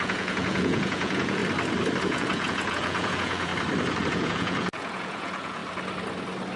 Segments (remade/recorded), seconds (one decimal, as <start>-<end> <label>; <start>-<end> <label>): 0.0-1.4 remade; 1.4-2.0 recorded; 2.0-3.5 remade; 3.5-4.1 recorded; 4.1-5.6 remade; 5.6-6.6 recorded